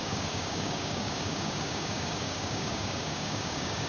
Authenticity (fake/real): fake